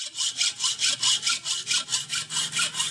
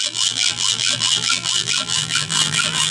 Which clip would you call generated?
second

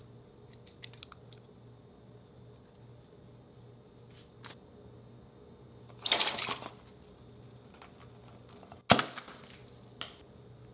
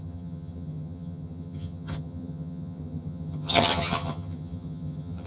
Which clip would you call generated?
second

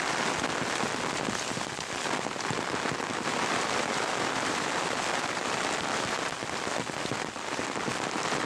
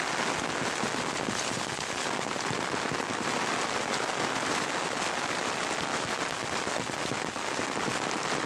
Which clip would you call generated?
first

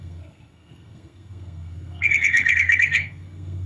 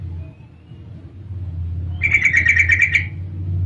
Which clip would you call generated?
first